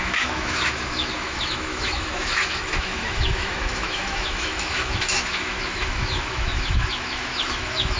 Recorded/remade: remade